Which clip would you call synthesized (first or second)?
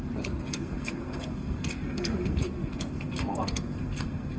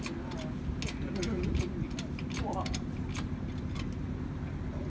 first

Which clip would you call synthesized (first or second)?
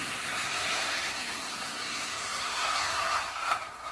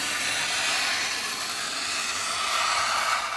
first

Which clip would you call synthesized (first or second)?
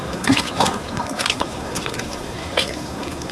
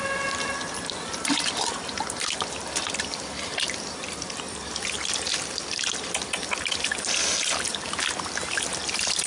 first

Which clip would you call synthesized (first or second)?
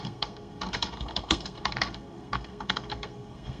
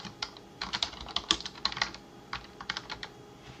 first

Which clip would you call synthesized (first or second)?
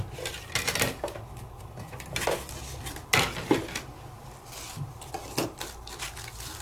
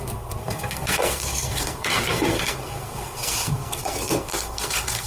second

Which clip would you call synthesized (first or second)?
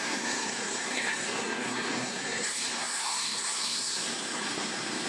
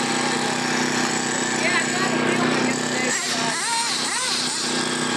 first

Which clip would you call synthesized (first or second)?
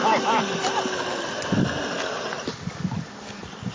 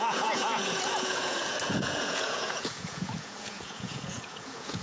second